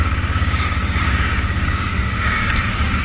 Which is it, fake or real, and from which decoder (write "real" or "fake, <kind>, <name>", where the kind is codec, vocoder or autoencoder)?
fake, codec, DAC